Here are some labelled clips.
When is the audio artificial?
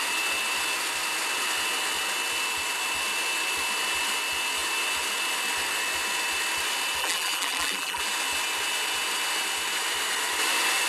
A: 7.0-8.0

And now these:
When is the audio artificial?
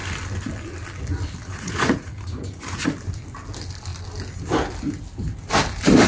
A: 1.5-2.9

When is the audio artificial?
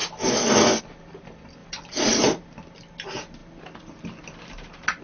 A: 1.6-2.5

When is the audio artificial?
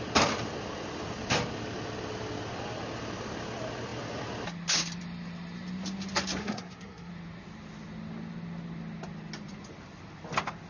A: 6.4-7.1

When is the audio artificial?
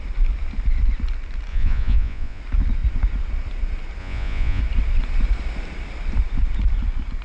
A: 1.5-2.4; 4.0-4.6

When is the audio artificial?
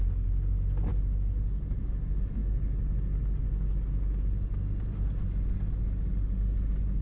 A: none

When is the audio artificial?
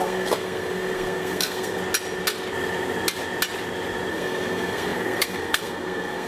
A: 0.0-1.8; 4.1-6.3